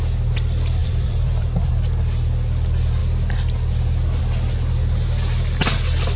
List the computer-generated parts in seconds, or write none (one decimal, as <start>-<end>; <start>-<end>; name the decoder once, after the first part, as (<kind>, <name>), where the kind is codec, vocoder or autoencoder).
0.8-1.7 (vocoder, BigVGAN v2)